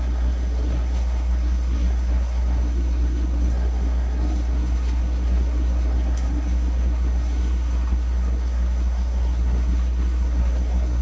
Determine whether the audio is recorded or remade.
remade